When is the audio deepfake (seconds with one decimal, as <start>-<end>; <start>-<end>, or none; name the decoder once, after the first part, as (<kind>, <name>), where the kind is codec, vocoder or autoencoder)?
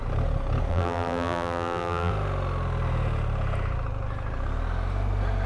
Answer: 0.7-2.1 (vocoder, BigVGAN v2)